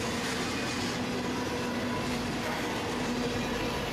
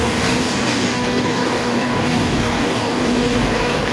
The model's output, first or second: second